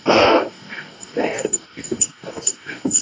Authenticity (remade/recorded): remade